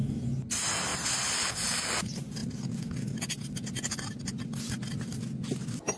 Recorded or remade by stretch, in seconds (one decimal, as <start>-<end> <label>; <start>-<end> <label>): 0.0-6.0 recorded